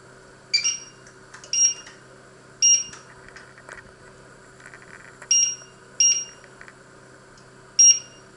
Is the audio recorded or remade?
recorded